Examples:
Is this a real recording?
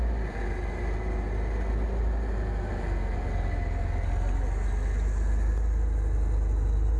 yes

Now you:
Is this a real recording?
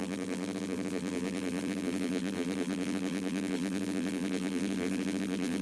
no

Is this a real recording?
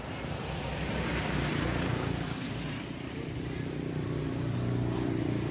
no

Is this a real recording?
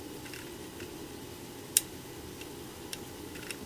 yes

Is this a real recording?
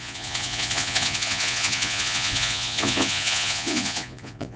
no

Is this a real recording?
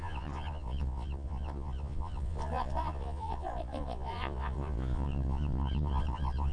no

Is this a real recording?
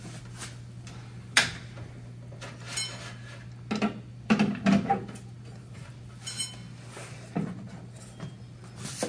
yes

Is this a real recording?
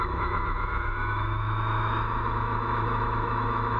no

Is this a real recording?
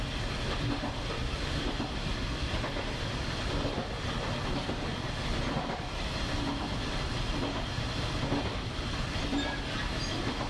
yes